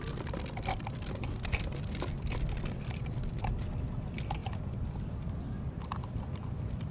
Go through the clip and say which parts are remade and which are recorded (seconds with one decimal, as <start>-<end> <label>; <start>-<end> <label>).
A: 0.0-4.4 recorded; 4.4-5.8 remade; 5.8-6.9 recorded